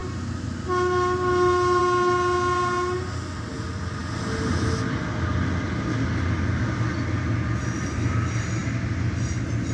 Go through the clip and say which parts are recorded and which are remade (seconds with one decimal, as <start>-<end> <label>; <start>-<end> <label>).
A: 0.0-9.7 recorded